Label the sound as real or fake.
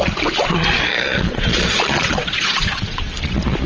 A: fake